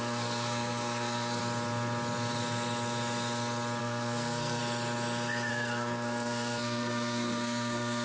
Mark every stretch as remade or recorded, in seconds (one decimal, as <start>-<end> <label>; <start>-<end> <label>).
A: 0.0-1.4 remade; 1.4-3.8 recorded; 3.8-4.6 remade; 4.6-5.5 recorded; 5.5-8.0 remade